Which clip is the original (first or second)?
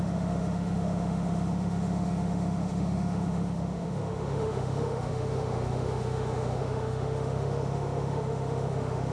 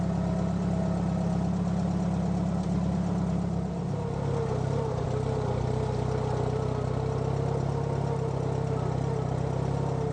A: second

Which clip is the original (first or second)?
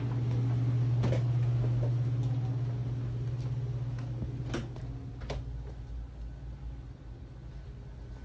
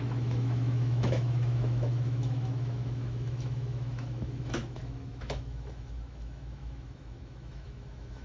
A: first